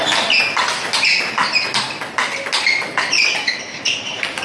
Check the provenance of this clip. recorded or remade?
recorded